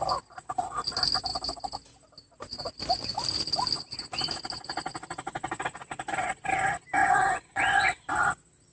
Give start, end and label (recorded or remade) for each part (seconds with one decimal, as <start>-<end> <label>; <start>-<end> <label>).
0.0-7.0 recorded; 7.0-8.0 remade; 8.0-8.7 recorded